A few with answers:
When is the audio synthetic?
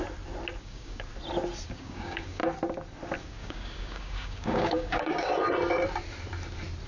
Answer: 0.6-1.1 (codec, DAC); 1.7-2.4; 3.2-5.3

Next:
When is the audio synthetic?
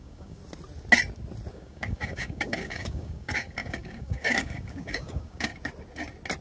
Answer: 0.0-0.4 (codec, DAC); 1.5-5.5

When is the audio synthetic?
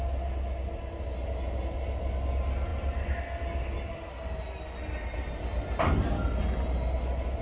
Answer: none